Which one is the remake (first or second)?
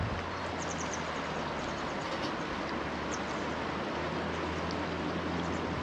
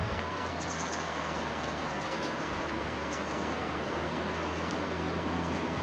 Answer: second